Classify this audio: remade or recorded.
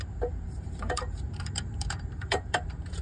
remade